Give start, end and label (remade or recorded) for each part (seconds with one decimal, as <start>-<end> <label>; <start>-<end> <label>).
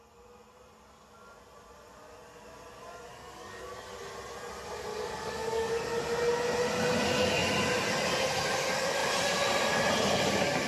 0.0-3.1 recorded; 3.1-3.7 remade; 3.7-4.9 recorded; 4.9-5.8 remade; 5.8-10.7 recorded